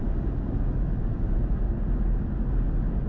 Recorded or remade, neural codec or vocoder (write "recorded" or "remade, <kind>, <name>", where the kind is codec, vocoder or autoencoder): recorded